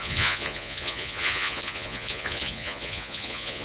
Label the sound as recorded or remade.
remade